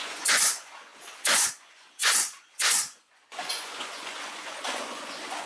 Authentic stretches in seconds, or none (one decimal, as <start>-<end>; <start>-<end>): none